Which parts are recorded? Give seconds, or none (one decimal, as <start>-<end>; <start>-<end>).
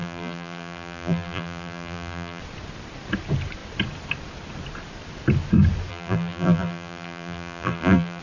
2.4-5.9